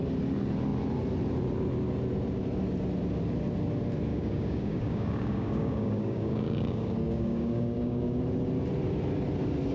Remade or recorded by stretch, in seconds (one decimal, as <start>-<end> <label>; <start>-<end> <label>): 0.0-4.1 recorded; 4.1-8.2 remade; 8.2-9.7 recorded

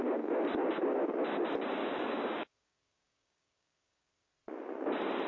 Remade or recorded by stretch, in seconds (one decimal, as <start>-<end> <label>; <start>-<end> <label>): 0.0-1.8 recorded; 1.8-4.3 remade; 4.3-5.3 recorded

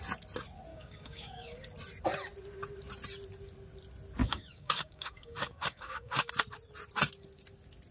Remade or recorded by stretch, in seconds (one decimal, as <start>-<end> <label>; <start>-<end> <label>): 0.0-0.7 recorded; 0.7-1.6 remade; 1.6-4.2 recorded; 4.2-6.3 remade; 6.3-7.9 recorded